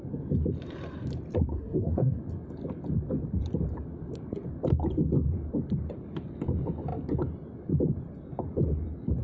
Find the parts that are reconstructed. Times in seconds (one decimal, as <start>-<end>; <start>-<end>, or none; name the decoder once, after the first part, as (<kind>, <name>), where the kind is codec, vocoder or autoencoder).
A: 1.5-2.2 (codec, SNAC)

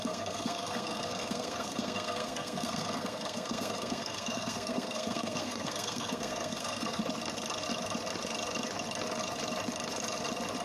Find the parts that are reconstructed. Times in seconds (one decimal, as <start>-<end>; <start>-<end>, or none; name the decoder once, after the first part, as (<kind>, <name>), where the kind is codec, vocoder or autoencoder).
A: 0.0-7.0 (codec, SNAC)

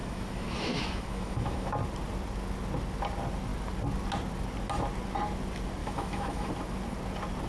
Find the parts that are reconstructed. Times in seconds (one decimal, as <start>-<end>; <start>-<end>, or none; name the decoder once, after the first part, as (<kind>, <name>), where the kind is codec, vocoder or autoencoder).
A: 0.0-1.7 (autoencoder, DAC-VAE); 5.8-6.5

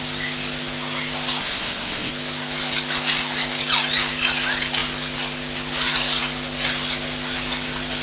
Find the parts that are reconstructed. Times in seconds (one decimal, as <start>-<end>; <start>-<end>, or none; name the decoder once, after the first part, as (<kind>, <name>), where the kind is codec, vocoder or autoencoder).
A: 1.4-2.1 (codec, SNAC)

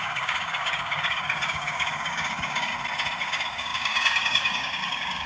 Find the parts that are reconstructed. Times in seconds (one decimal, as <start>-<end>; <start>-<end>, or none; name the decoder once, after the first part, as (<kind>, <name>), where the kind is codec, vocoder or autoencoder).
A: 0.0-2.7 (codec, DAC); 3.2-5.3

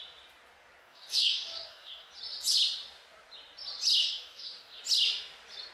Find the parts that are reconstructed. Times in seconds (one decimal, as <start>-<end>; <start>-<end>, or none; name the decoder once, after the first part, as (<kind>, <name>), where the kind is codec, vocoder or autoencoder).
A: 0.8-2.1 (codec, DAC); 4.0-4.8

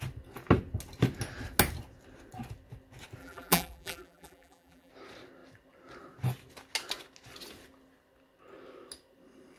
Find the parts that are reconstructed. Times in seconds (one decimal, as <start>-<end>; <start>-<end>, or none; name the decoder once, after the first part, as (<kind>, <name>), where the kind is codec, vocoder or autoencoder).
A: 3.2-4.9 (vocoder, BigVGAN v2)

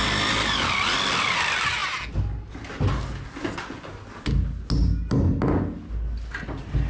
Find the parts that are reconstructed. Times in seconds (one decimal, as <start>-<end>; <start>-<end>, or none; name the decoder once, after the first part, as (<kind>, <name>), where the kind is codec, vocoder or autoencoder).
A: none